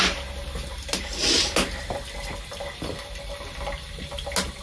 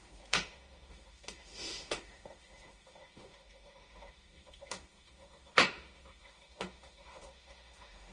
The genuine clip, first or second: first